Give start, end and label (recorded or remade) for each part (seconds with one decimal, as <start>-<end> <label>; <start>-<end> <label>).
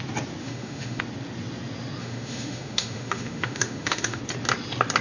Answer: 0.0-0.4 recorded; 0.4-1.0 remade; 1.0-2.0 recorded; 2.0-4.2 remade; 4.2-5.0 recorded